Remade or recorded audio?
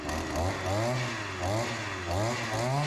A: recorded